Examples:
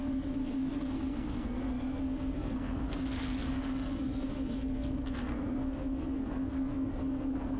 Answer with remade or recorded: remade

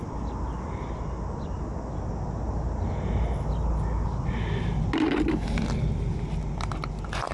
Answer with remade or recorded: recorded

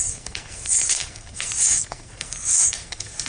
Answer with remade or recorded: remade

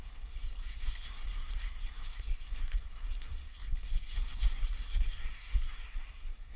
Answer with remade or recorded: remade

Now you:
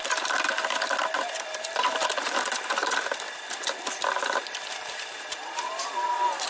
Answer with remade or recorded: recorded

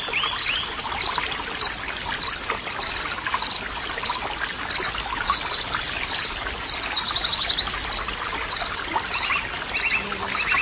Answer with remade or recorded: recorded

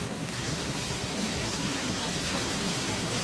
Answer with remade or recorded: remade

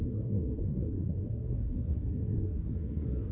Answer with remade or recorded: remade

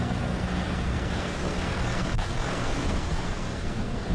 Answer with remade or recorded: remade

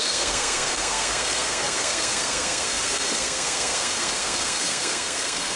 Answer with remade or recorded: remade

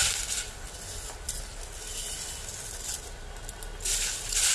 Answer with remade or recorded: recorded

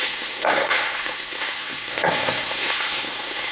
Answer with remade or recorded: remade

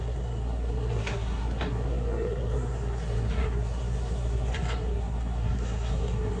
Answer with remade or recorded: remade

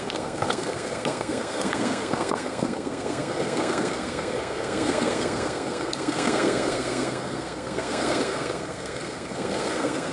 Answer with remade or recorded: remade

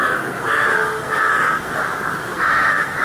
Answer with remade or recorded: remade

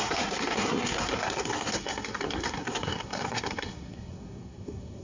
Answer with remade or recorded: remade